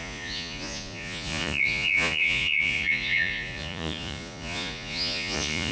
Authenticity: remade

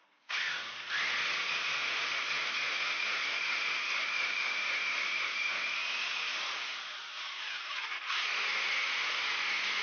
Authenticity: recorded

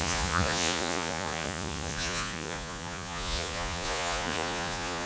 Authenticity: remade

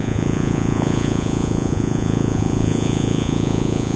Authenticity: remade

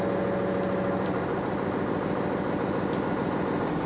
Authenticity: recorded